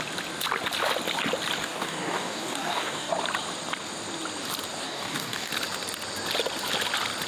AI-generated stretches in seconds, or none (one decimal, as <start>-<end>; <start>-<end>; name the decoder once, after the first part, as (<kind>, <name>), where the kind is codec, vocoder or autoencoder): 1.6-3.1 (codec, DAC); 4.8-5.5